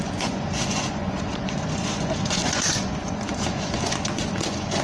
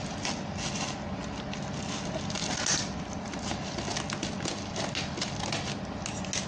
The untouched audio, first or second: second